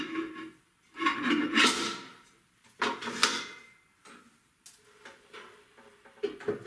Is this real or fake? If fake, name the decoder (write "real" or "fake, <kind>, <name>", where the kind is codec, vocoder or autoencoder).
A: real